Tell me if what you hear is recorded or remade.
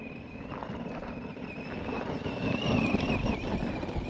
recorded